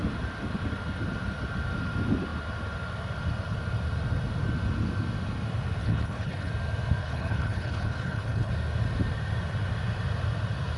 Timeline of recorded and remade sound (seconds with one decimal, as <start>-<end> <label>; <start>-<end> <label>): 0.0-5.8 recorded; 5.8-6.5 remade; 6.5-7.0 recorded; 7.0-8.5 remade; 8.5-10.8 recorded